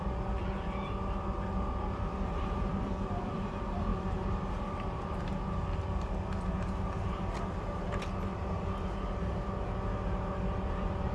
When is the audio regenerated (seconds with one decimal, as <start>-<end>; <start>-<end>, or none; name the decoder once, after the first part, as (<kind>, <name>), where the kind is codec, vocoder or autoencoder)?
none